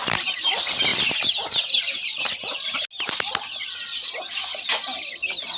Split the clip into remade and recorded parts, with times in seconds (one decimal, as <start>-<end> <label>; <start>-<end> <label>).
0.0-5.6 recorded